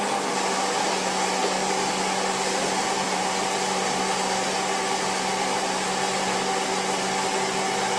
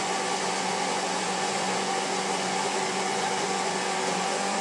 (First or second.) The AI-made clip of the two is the second